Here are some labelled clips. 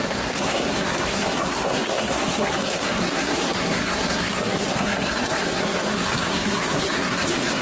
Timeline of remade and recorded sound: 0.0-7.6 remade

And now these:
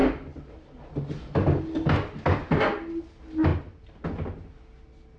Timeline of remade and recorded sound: 0.0-5.2 recorded

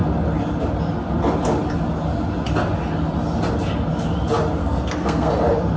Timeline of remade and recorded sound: 0.0-4.6 recorded; 4.6-5.3 remade; 5.3-5.8 recorded

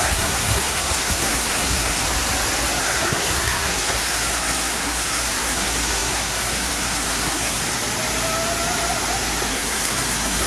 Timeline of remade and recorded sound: 0.0-2.0 remade; 2.0-2.8 recorded; 2.8-7.6 remade; 7.6-9.5 recorded; 9.5-10.5 remade

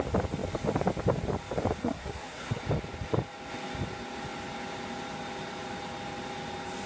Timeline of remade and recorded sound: 0.0-1.8 recorded; 1.8-2.6 remade; 2.6-6.9 recorded

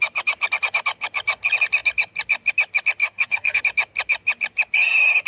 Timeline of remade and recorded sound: 0.0-3.0 recorded; 3.0-3.6 remade; 3.6-5.3 recorded